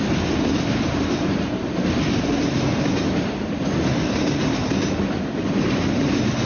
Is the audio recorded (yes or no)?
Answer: yes